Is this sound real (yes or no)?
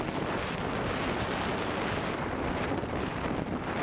no